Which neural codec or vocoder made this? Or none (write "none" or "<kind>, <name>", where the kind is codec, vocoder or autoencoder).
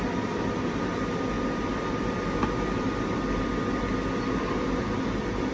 none